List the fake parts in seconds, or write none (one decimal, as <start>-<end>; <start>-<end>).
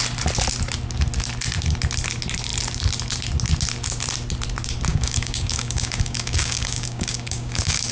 4.9-7.9